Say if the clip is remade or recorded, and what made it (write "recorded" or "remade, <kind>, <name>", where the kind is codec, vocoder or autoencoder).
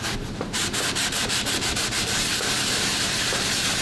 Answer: remade, vocoder, BigVGAN v2